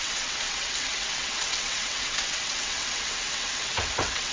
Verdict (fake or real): fake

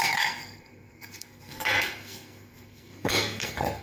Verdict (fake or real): fake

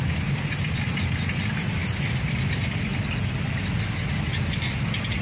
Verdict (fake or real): real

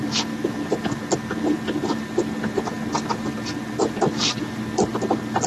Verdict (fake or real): real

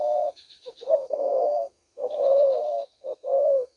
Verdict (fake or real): fake